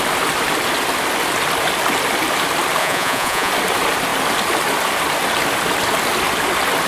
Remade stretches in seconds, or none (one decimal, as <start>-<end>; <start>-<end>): 2.8-3.5